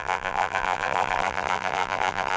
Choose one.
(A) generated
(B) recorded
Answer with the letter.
A